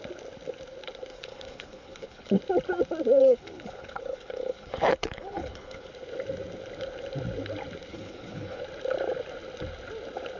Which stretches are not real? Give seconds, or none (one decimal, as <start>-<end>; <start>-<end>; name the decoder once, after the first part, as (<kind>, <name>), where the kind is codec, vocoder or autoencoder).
1.1-2.3 (codec, HILCodec); 3.2-5.9; 7.9-8.6